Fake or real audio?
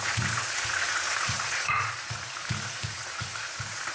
fake